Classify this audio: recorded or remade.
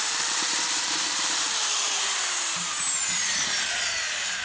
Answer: remade